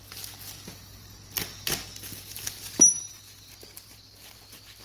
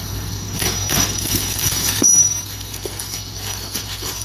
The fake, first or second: second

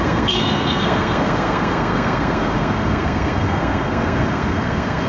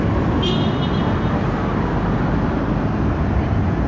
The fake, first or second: first